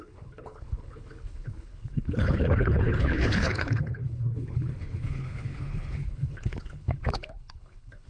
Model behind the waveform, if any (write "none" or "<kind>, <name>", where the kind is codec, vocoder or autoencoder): codec, HILCodec